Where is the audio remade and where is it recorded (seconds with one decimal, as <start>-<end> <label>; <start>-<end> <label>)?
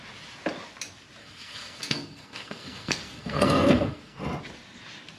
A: 0.0-1.2 recorded; 1.2-4.2 remade; 4.2-5.2 recorded